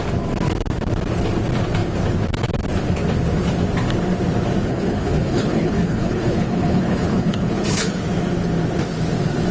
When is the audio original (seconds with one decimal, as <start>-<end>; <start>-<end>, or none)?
0.0-4.7; 8.0-9.5